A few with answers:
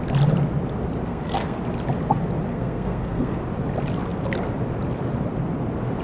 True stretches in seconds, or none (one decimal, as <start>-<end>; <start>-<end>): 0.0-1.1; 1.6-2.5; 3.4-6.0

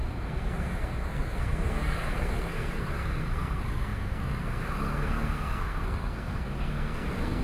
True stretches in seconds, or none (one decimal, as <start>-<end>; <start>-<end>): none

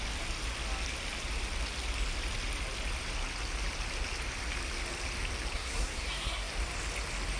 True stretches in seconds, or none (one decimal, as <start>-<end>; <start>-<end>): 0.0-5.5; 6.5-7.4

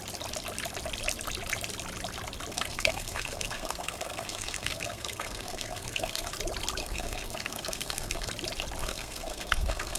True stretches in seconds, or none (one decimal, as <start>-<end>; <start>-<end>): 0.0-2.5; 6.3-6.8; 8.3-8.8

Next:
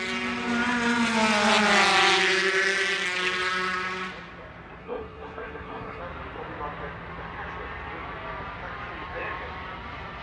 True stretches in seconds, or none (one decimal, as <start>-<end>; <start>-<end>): 0.0-4.8; 6.0-10.2